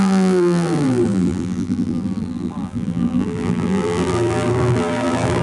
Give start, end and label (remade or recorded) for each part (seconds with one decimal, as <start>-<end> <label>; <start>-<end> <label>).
0.0-5.4 remade